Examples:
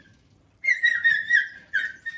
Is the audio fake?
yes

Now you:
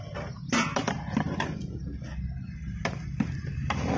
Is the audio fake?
no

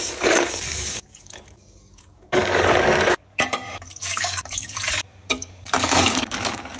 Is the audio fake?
yes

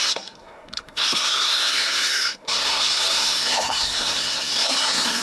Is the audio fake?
yes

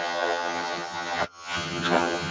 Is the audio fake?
yes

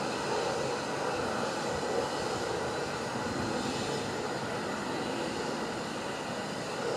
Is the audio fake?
no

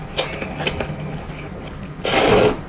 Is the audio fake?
no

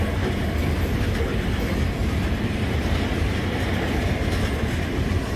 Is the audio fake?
no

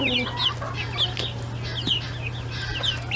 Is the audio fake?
no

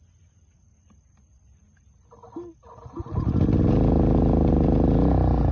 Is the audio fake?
no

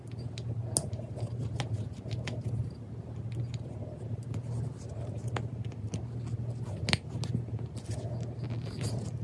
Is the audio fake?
no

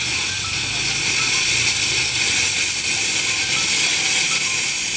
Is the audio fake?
no